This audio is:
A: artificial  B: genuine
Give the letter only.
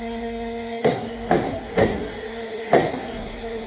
A